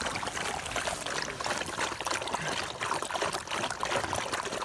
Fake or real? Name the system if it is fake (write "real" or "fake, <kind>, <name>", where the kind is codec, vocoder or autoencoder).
real